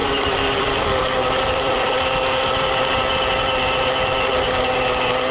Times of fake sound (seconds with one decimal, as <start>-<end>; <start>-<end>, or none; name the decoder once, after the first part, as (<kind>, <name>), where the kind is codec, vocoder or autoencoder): 0.0-2.1 (vocoder, BigVGAN v2)